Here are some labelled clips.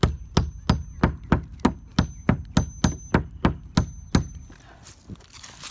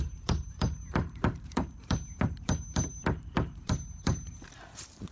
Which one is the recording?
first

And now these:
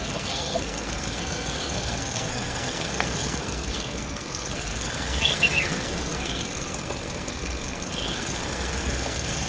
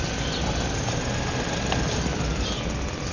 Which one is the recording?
second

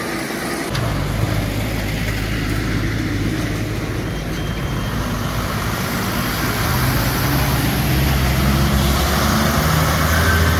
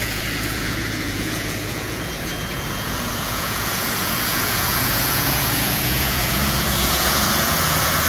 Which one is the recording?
first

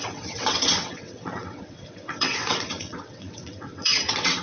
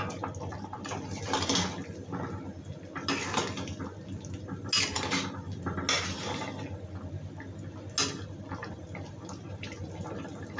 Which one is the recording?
second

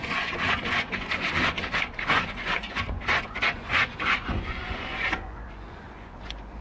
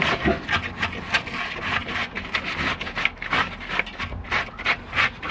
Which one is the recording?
second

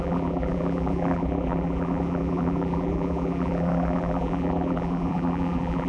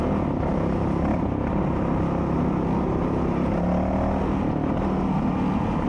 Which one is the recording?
second